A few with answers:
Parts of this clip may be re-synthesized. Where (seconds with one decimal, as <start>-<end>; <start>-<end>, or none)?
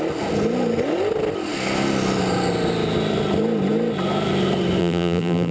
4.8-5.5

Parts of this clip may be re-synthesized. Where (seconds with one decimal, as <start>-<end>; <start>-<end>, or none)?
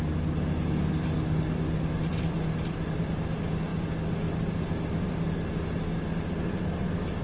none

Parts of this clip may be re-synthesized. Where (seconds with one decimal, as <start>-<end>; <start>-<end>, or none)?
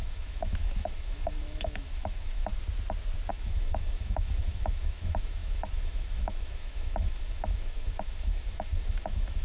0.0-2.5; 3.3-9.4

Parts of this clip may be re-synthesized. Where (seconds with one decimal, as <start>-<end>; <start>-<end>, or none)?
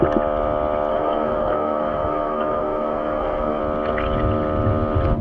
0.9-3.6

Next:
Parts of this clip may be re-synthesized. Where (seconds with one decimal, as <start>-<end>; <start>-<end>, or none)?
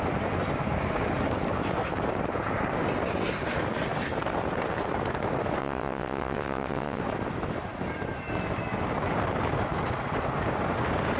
5.6-7.0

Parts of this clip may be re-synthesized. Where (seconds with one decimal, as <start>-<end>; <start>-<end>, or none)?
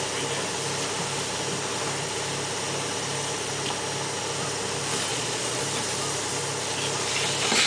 5.1-5.6